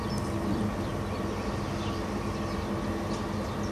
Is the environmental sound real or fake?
real